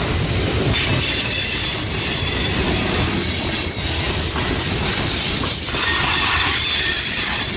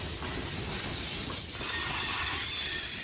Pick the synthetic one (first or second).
first